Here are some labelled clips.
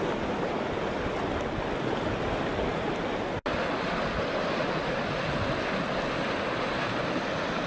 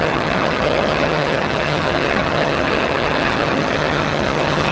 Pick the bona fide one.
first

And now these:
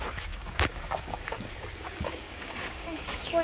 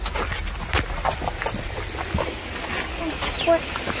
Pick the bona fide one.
second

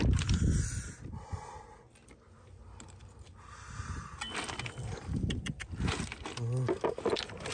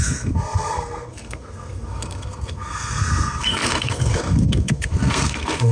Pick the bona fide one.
first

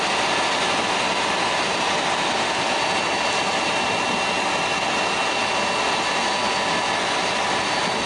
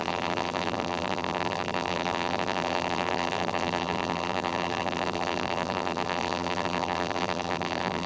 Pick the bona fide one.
first